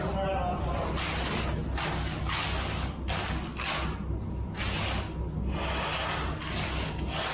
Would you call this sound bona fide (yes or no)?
yes